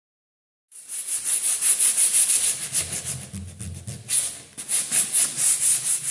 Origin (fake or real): real